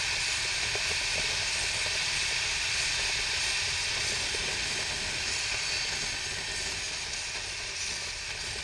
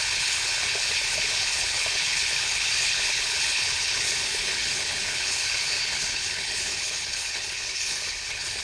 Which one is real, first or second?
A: first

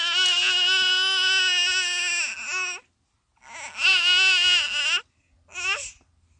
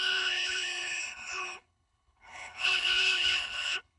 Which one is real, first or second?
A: first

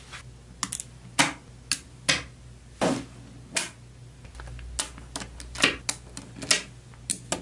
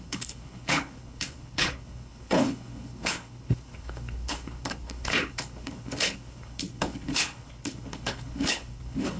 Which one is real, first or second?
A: first